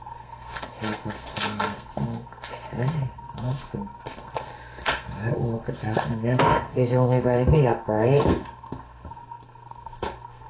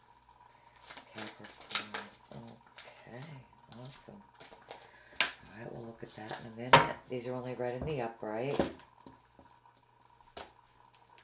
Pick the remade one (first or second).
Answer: first